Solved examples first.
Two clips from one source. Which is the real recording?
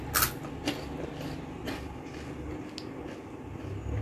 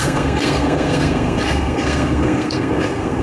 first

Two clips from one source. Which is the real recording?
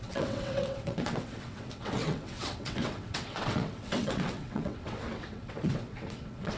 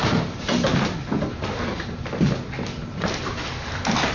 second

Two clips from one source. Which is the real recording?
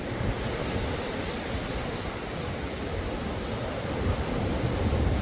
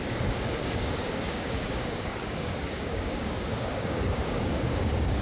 first